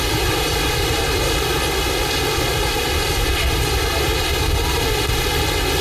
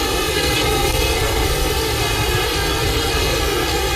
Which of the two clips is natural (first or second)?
first